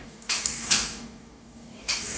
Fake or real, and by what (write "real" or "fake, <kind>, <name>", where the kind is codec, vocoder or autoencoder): fake, codec, DAC